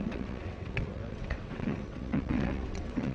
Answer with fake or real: fake